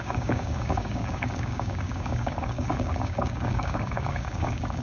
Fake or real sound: fake